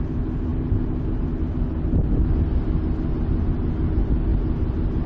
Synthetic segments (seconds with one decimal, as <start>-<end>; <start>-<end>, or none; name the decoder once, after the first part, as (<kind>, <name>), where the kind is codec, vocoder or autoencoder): none